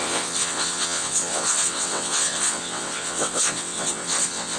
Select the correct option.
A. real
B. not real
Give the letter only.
B